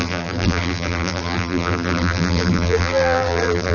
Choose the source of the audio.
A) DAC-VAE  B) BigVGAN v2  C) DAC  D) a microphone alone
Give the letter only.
B